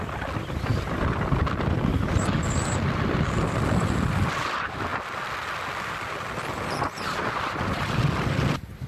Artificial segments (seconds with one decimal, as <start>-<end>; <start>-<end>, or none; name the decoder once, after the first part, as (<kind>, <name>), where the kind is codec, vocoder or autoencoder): none

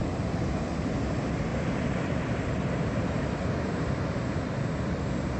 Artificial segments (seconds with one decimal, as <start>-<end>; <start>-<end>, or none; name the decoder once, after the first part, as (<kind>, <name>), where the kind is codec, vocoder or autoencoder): 0.0-0.7 (vocoder, BigVGAN v2); 1.5-4.5

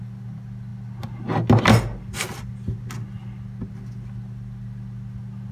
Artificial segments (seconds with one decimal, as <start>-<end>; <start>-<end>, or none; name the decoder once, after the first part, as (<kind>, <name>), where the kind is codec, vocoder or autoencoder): none

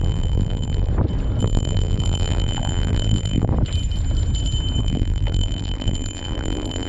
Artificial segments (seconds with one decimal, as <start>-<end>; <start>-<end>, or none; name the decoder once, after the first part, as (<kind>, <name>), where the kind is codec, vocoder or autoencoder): 0.0-0.9 (vocoder, BigVGAN v2); 1.4-3.5; 4.8-6.9

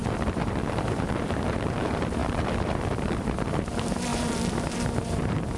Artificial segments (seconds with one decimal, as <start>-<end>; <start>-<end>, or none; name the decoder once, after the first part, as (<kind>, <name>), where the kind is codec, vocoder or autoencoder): 0.0-5.6 (vocoder, BigVGAN v2)